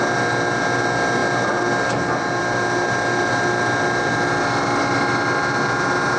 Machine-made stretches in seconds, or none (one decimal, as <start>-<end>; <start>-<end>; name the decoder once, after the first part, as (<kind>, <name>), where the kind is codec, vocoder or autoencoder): none